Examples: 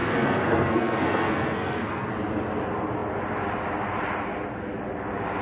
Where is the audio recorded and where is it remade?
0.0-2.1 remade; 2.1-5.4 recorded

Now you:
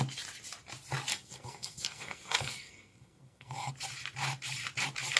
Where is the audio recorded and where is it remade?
0.0-1.1 recorded; 1.1-3.7 remade; 3.7-5.2 recorded

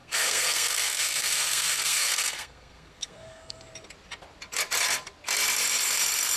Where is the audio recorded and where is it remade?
0.0-3.6 remade; 3.6-6.4 recorded